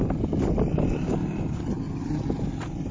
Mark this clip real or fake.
real